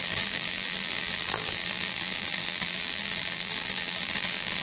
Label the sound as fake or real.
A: fake